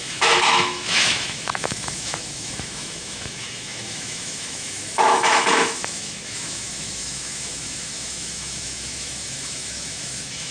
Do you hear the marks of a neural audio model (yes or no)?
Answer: yes